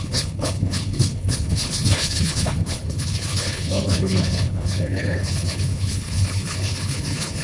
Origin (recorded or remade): remade